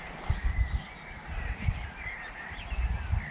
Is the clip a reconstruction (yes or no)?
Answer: no